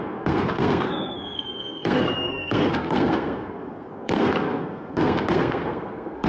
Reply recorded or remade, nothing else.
remade